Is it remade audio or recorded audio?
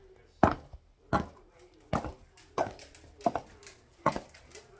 recorded